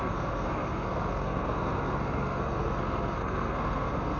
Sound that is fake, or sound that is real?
fake